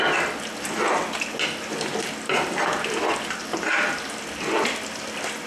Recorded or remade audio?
recorded